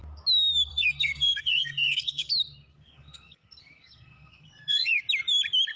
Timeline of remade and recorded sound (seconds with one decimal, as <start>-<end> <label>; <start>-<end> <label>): 0.0-0.7 recorded; 0.7-2.3 remade; 2.3-2.7 recorded; 2.7-5.0 remade; 5.0-5.8 recorded